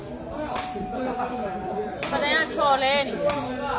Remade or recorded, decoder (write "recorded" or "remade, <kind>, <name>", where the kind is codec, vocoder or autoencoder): recorded